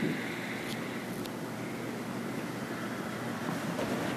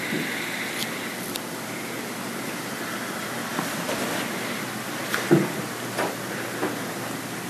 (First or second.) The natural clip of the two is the first